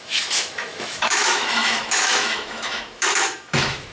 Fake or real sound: fake